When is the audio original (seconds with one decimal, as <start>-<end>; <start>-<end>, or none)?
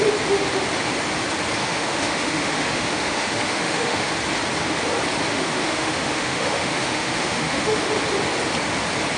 0.0-1.6; 4.1-5.3; 7.9-9.2